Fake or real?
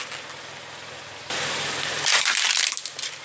real